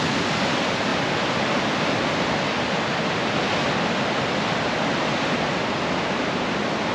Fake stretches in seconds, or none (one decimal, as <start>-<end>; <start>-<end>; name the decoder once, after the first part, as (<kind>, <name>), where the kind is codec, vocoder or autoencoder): none